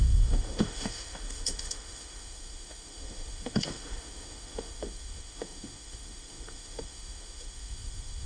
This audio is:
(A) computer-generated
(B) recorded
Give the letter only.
A